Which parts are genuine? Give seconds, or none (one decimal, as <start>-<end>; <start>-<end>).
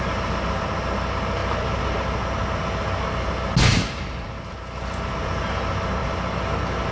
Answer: 0.0-6.9